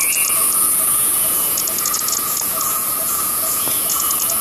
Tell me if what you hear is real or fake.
fake